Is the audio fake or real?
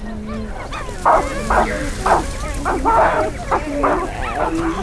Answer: real